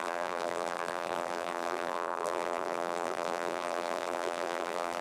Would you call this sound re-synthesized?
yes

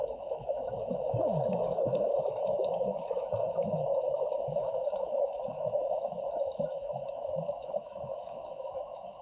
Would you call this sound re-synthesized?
yes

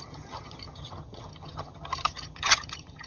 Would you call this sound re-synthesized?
yes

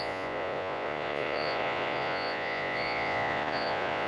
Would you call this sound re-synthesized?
yes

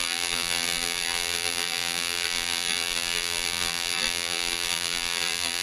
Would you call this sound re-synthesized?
yes